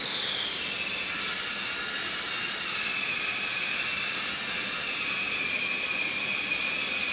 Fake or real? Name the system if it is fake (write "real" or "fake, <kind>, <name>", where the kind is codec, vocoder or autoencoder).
real